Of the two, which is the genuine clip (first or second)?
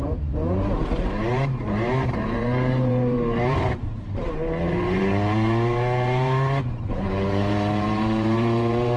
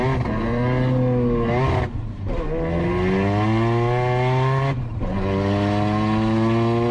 second